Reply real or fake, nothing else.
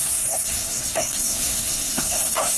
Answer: fake